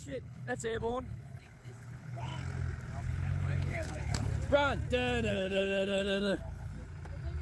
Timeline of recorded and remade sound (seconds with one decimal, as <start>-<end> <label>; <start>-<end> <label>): 0.0-2.3 remade; 2.3-3.0 recorded; 3.0-4.3 remade; 4.3-5.3 recorded; 5.3-6.7 remade; 6.7-7.4 recorded